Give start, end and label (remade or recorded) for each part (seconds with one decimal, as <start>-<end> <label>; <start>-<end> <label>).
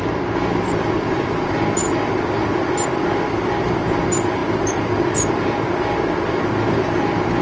0.0-7.4 recorded